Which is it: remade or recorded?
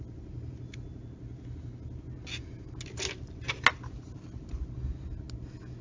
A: recorded